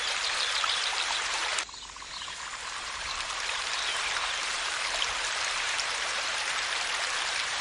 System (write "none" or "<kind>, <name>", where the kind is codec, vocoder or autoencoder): vocoder, BigVGAN v2